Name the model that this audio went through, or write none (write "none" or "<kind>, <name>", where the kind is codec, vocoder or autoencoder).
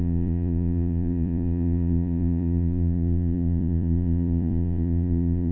vocoder, Vocos